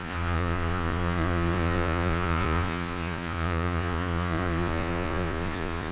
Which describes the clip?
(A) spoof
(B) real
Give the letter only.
A